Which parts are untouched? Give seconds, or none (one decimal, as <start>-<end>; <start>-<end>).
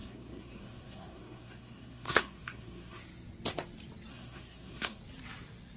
3.0-4.1; 5.0-5.8